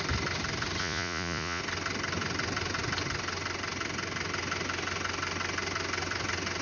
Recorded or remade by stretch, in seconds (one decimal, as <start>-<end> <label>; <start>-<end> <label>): 0.0-0.8 recorded; 0.8-1.6 remade; 1.6-6.6 recorded